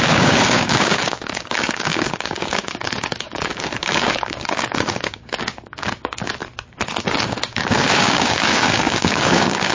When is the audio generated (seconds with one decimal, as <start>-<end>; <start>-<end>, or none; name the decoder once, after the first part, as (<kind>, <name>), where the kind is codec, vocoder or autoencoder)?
0.0-6.4 (codec, DAC); 7.0-9.7